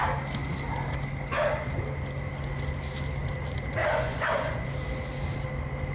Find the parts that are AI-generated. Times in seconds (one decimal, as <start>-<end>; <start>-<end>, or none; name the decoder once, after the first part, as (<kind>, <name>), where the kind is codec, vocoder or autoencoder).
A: 3.8-4.7 (vocoder, Vocos)